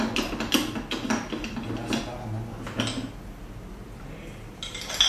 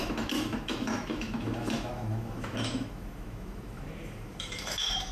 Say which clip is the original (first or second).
first